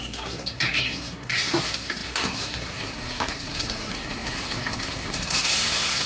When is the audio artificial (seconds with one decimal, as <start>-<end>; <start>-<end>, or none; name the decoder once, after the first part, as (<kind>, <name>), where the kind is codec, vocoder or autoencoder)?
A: 0.0-6.1 (codec, SNAC)